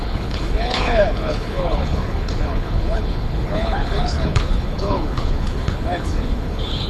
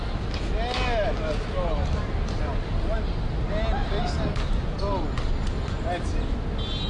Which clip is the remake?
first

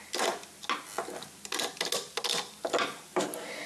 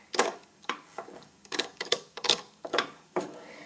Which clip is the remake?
second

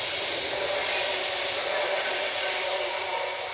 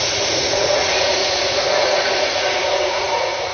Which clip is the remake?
second